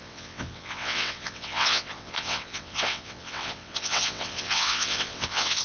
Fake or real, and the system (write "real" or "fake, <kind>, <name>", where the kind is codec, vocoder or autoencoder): fake, vocoder, WaveNeXt